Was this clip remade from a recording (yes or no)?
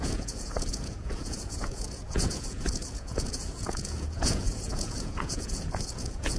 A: yes